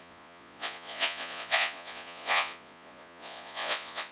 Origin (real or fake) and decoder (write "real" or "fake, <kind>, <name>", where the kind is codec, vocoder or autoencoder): fake, vocoder, Vocos